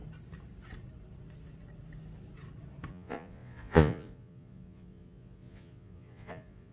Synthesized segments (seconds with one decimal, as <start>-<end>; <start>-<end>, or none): 2.9-6.7